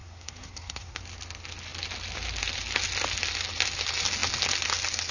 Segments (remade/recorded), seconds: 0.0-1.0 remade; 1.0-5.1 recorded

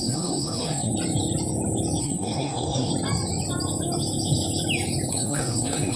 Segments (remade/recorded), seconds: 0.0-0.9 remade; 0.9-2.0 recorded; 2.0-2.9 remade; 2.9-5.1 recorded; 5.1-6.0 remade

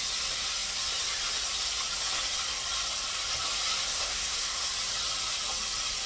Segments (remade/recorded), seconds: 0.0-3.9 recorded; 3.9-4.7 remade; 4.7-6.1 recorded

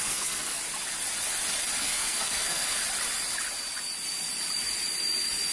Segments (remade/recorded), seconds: 0.0-0.6 remade; 0.6-1.8 recorded; 1.8-2.8 remade; 2.8-5.5 recorded

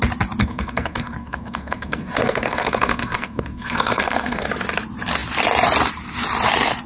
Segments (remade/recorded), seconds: 0.0-0.4 recorded; 0.4-4.5 remade; 4.5-6.9 recorded

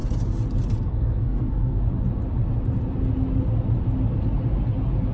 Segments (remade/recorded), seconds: 0.0-0.8 recorded; 0.8-1.8 remade; 1.8-5.1 recorded

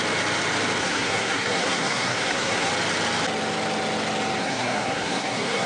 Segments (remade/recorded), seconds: 0.0-0.8 recorded; 0.8-2.7 remade; 2.7-4.4 recorded; 4.4-5.7 remade